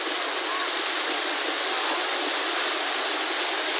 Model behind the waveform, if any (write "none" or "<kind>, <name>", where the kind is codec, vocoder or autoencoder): none